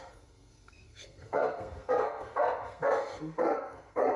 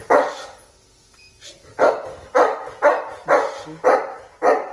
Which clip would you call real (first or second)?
second